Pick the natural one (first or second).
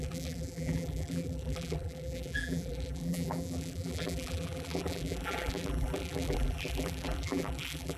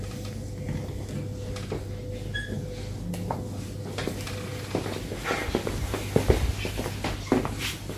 second